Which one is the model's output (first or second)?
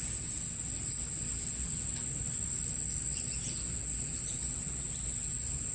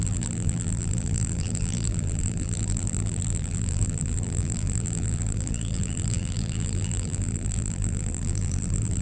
second